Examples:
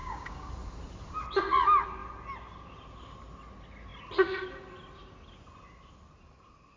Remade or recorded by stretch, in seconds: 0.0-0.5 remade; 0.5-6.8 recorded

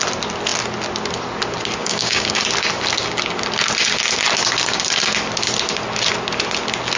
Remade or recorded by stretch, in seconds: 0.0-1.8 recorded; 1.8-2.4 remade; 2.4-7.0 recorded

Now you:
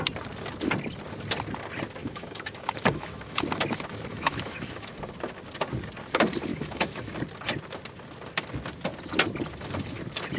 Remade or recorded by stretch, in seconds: 0.0-2.0 recorded; 2.0-3.4 remade; 3.4-4.1 recorded; 4.1-4.9 remade; 4.9-6.5 recorded; 6.5-7.1 remade; 7.1-10.4 recorded